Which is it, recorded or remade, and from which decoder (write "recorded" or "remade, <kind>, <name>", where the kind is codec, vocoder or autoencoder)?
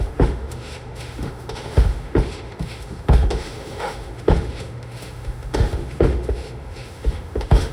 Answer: remade, autoencoder, DAC-VAE